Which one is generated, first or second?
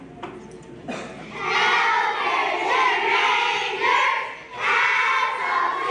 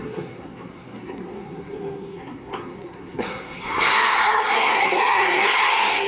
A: second